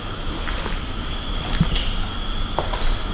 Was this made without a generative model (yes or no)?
yes